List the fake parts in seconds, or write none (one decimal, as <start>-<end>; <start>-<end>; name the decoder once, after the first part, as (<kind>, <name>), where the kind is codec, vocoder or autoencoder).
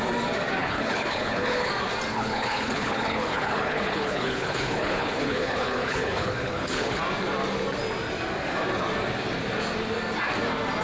0.6-1.7 (codec, HILCodec); 2.1-7.0